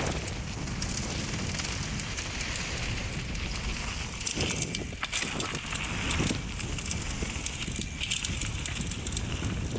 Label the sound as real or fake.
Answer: real